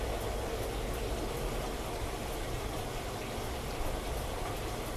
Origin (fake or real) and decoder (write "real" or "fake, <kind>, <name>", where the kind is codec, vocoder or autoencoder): real